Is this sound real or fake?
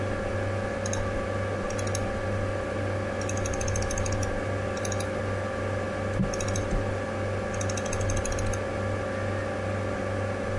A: real